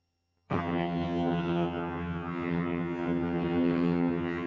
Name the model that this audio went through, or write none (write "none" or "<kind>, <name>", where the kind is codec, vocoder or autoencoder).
vocoder, HiFi-GAN